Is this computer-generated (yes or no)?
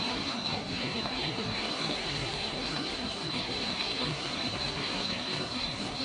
yes